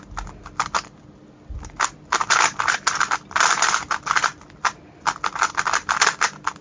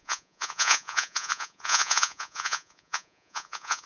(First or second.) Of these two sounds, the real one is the first